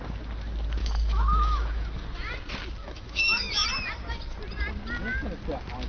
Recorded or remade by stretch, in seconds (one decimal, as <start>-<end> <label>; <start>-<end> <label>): 0.0-0.8 recorded; 0.8-2.0 remade; 2.0-2.8 recorded; 2.8-3.5 remade; 3.5-5.9 recorded